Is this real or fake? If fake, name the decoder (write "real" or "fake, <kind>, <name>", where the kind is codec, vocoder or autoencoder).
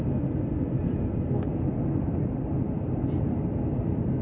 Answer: real